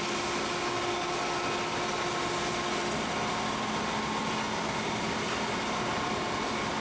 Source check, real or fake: real